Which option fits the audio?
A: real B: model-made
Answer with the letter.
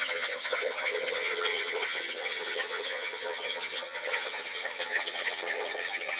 B